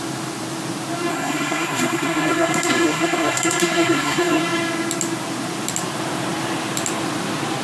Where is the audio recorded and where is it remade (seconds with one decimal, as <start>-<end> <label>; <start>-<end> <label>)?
0.0-1.1 recorded; 1.1-4.4 remade; 4.4-7.6 recorded